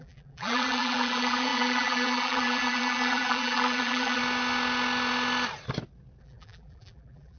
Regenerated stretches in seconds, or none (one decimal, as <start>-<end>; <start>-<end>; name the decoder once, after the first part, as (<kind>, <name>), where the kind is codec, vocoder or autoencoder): 0.0-4.2 (vocoder, BigVGAN v2); 6.2-7.4